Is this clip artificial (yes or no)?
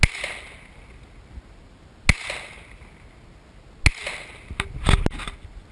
no